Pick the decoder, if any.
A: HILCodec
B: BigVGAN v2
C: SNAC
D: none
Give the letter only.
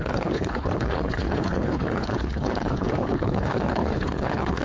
A